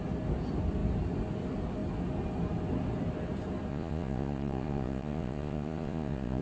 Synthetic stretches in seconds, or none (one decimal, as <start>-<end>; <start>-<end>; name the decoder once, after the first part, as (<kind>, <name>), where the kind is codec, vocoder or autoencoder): 3.7-6.4 (vocoder, Vocos)